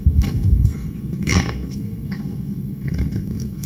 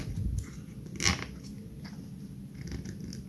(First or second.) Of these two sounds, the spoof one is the first